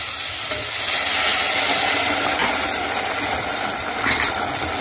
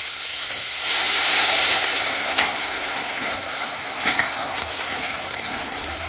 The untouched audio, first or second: first